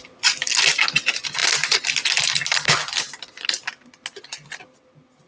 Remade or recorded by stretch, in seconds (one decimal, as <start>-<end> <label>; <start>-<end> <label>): 0.0-5.3 recorded